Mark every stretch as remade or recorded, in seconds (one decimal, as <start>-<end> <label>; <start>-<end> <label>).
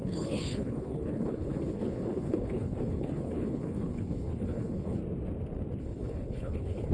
0.0-5.0 remade; 5.0-5.8 recorded; 5.8-6.9 remade